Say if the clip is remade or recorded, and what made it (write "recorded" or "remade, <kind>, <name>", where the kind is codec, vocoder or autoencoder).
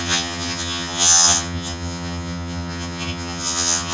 remade, vocoder, HiFi-GAN